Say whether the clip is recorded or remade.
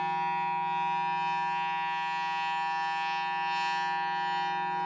recorded